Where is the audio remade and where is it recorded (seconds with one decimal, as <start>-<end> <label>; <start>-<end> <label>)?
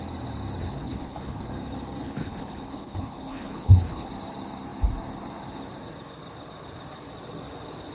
0.0-0.6 recorded; 0.6-1.5 remade; 1.5-2.0 recorded; 2.0-4.1 remade; 4.1-7.9 recorded